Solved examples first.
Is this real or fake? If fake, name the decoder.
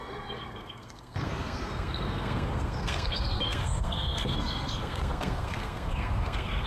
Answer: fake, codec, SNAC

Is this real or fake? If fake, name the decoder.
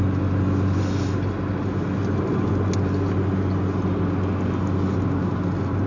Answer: real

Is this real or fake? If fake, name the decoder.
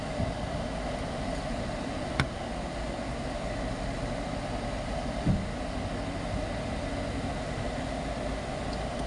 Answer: real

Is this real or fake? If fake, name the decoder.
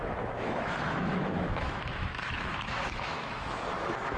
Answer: fake, autoencoder, DAC-VAE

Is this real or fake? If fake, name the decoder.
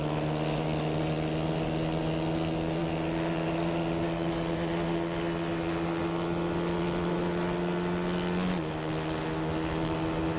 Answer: real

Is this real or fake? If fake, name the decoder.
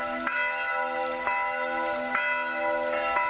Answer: real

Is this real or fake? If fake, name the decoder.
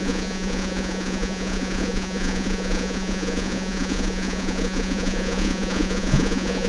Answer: fake, vocoder, Vocos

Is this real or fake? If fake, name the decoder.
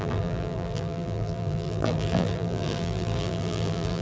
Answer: fake, vocoder, BigVGAN v2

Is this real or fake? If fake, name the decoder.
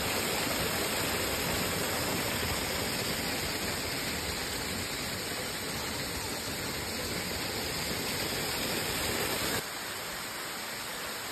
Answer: real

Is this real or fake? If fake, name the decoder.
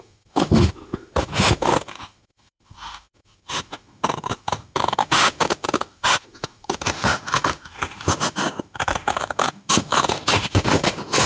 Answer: fake, autoencoder, DAC-VAE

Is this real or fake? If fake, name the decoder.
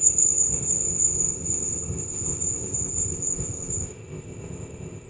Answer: fake, codec, ZipCodec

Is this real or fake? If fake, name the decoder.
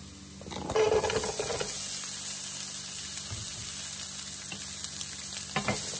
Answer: real